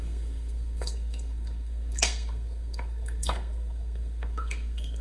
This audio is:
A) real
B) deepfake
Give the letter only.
B